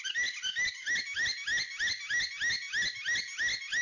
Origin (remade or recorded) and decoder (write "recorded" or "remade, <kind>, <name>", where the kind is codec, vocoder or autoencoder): recorded